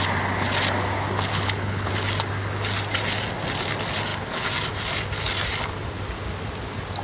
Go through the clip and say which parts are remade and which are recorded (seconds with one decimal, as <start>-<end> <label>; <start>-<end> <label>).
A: 0.0-1.3 recorded; 1.3-1.9 remade; 1.9-7.0 recorded